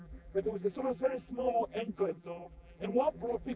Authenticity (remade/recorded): remade